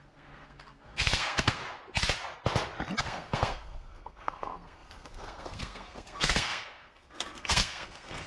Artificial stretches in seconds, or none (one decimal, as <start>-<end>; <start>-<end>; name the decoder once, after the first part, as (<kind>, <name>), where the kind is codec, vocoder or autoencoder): 0.0-1.6 (codec, SNAC); 3.0-8.3